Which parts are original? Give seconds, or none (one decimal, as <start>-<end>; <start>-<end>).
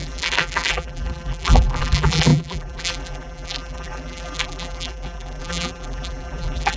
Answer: none